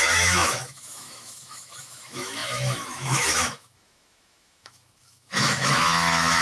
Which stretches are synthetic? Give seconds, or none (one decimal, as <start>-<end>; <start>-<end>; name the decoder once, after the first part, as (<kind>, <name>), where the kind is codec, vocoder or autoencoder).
0.0-6.4 (autoencoder, DAC-VAE)